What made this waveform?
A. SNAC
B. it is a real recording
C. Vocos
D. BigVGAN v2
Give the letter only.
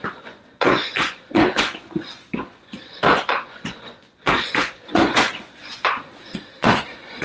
C